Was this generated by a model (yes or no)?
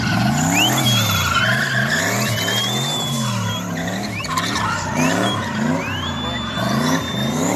no